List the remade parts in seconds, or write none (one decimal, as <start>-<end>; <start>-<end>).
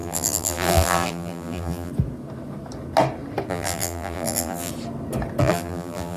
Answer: 0.0-1.9; 3.5-4.7; 5.4-6.2